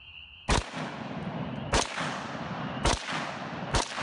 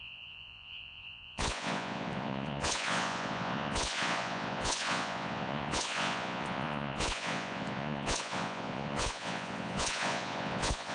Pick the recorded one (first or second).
first